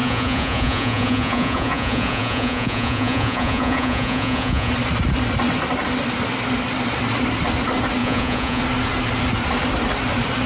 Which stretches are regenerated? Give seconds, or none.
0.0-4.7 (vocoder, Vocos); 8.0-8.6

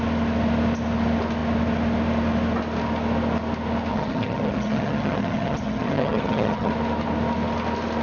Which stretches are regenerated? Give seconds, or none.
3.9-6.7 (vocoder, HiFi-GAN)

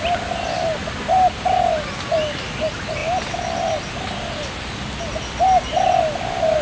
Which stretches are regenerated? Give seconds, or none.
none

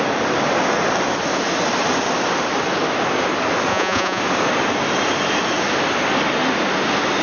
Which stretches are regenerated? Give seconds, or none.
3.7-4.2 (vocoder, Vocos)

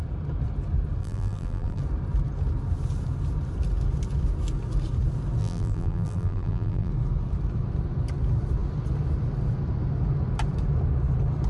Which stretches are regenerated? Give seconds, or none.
1.0-1.8 (vocoder, BigVGAN v2); 5.4-6.9

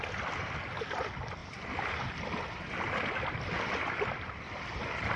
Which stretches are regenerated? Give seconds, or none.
none

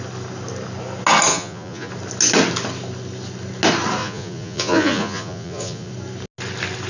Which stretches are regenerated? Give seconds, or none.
1.3-1.9 (vocoder, Vocos); 4.0-5.9